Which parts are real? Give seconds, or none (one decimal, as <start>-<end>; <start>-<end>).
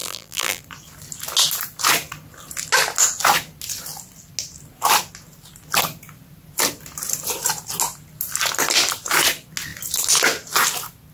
0.6-11.1